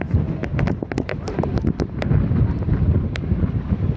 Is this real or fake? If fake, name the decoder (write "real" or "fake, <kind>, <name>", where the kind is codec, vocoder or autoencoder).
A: real